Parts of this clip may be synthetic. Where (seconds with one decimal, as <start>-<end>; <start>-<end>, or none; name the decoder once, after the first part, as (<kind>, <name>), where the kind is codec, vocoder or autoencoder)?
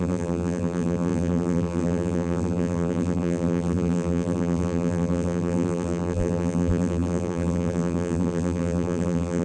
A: 0.0-9.4 (vocoder, BigVGAN v2)